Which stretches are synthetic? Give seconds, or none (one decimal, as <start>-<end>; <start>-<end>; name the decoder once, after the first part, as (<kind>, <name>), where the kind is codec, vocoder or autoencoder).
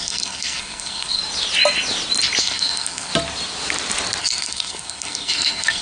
0.0-1.2 (codec, SNAC); 2.4-3.1; 4.2-5.8